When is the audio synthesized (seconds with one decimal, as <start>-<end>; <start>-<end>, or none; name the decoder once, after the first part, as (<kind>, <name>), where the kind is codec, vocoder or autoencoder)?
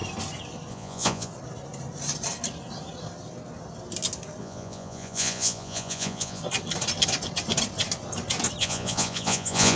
0.7-1.3 (vocoder, Vocos); 4.4-6.4; 8.6-9.8